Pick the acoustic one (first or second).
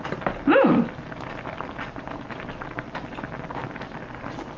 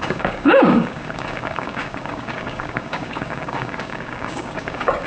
first